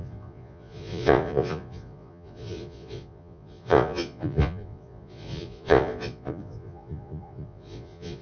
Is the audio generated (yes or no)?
yes